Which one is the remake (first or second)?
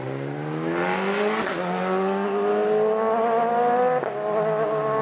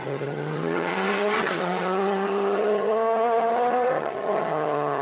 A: second